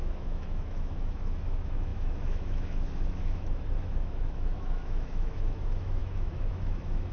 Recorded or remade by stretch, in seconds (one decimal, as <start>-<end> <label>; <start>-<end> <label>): 0.0-7.1 remade